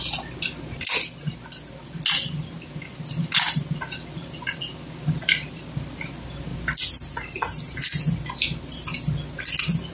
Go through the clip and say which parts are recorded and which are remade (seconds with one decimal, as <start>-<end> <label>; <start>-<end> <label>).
0.0-9.9 recorded